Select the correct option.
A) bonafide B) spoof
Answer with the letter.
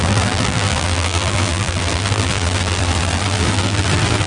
B